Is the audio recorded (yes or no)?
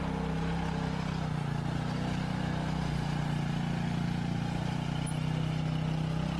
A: yes